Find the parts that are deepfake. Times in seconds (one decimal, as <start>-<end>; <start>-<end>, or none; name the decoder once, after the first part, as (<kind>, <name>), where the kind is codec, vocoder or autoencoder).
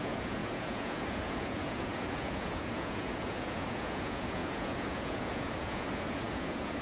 0.0-6.8 (vocoder, Vocos)